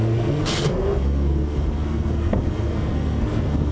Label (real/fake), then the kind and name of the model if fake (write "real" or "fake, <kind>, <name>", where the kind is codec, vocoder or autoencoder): fake, codec, SNAC